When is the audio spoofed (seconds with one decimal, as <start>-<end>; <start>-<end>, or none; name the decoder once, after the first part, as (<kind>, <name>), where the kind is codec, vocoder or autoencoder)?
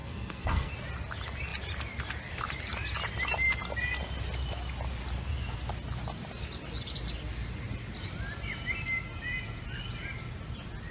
0.0-0.7 (codec, SNAC)